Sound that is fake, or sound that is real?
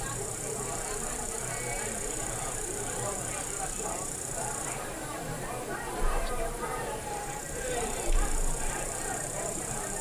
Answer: fake